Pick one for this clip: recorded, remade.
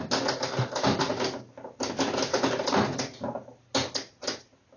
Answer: recorded